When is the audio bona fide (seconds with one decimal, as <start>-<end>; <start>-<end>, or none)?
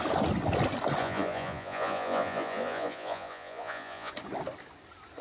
0.0-1.0; 4.1-5.2